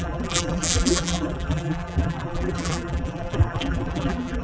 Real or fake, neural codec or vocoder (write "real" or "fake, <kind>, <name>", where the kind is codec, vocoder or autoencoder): fake, vocoder, BigVGAN v2